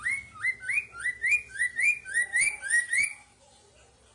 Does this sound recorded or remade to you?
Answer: recorded